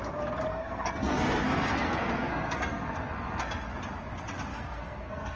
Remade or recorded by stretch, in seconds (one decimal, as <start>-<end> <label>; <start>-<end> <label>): 0.0-0.5 recorded; 0.5-3.7 remade; 3.7-4.5 recorded; 4.5-5.4 remade